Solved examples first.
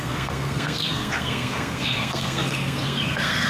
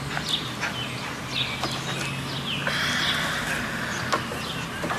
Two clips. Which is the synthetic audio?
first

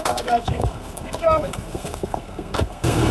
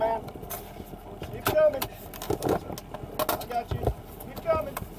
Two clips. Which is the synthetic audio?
first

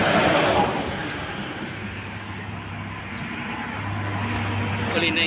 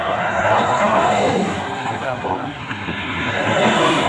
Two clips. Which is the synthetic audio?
second